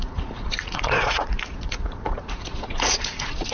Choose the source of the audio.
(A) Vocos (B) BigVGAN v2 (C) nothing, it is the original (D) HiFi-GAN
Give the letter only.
A